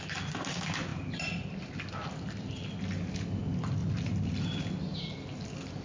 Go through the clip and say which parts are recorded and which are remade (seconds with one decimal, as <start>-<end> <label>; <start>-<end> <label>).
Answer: 0.0-0.9 recorded; 0.9-2.8 remade; 2.8-3.8 recorded; 3.8-5.1 remade; 5.1-5.8 recorded